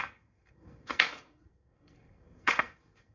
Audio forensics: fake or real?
fake